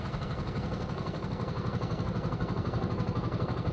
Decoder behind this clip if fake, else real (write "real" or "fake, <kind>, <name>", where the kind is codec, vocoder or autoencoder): fake, codec, SNAC